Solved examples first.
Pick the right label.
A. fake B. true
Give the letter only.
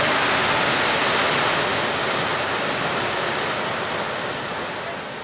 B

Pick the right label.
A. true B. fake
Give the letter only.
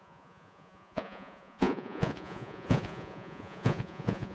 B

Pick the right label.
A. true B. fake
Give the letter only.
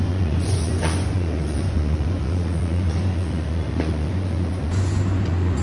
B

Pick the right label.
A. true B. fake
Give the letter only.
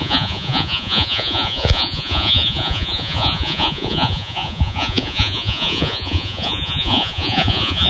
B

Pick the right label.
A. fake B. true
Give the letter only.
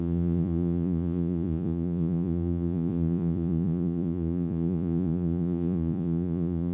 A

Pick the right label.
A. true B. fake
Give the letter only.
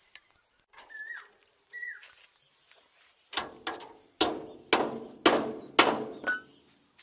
A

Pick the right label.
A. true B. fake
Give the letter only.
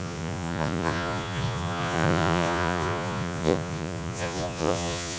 B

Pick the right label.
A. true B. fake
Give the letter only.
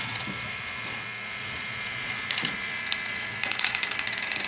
B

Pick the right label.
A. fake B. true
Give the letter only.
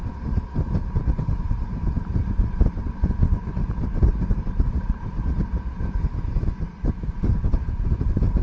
B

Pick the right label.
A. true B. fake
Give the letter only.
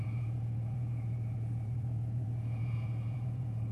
B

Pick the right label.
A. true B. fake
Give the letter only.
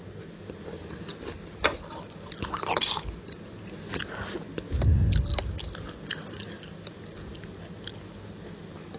A